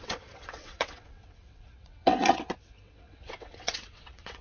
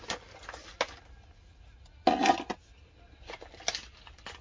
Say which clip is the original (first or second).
second